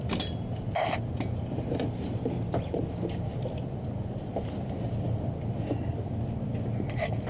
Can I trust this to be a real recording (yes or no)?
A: yes